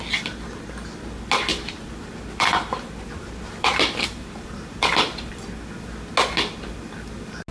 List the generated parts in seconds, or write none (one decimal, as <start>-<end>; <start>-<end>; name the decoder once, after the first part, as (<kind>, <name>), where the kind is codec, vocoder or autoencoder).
1.5-5.3 (vocoder, BigVGAN v2)